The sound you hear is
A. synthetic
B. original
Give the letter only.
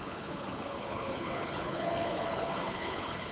A